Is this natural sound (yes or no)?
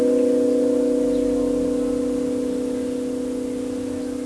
yes